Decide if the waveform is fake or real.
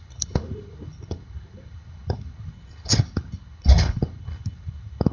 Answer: fake